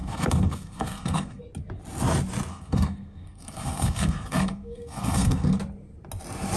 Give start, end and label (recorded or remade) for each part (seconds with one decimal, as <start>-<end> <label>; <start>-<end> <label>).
0.0-1.4 remade; 1.4-2.5 recorded; 2.5-5.6 remade; 5.6-6.6 recorded